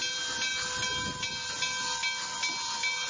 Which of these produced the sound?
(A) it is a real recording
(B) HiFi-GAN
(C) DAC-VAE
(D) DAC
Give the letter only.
A